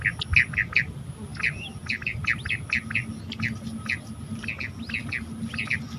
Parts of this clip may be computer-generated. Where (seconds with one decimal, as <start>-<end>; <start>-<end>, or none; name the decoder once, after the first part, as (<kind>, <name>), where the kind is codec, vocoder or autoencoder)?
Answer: none